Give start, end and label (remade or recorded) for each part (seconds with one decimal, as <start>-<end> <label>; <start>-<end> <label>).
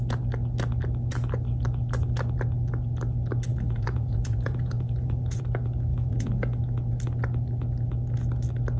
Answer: 0.0-3.5 recorded; 3.5-5.4 remade; 5.4-5.9 recorded; 5.9-6.6 remade; 6.6-8.8 recorded